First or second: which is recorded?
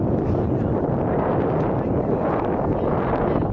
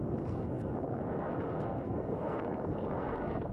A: first